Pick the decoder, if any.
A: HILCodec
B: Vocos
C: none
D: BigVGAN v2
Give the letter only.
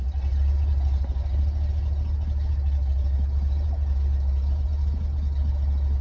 C